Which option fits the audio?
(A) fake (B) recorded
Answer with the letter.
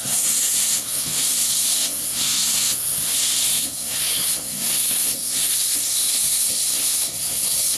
A